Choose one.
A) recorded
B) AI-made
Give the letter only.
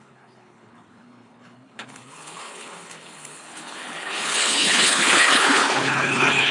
B